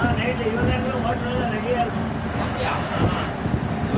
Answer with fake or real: real